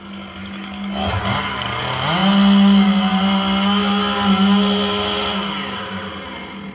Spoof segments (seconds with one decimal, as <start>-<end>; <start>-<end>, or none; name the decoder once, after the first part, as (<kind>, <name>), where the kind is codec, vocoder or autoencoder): 0.4-1.8 (codec, DAC)